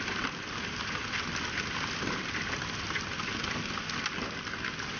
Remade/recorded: recorded